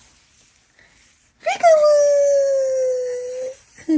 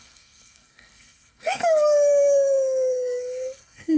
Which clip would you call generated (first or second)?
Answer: second